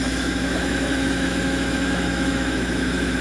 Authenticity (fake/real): fake